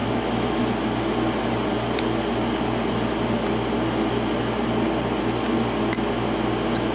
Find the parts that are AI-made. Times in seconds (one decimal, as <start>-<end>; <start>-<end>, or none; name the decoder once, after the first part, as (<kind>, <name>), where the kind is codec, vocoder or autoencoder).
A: 0.0-0.6 (autoencoder, DAC-VAE)